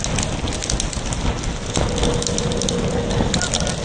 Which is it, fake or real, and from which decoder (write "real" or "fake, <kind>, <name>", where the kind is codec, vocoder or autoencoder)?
real